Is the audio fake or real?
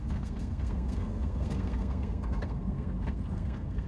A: fake